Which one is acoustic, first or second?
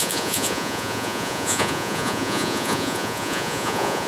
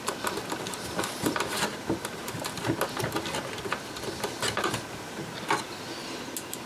second